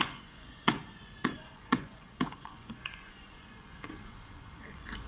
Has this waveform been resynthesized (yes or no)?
yes